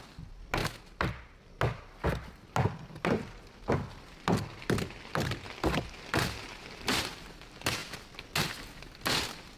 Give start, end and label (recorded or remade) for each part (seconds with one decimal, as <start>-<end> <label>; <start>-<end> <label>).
0.0-9.6 recorded